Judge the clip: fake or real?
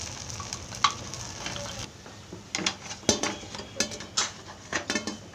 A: real